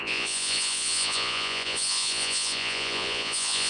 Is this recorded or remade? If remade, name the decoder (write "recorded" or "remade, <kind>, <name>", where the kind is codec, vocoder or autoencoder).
remade, vocoder, Vocos